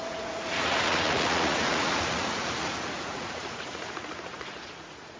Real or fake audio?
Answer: fake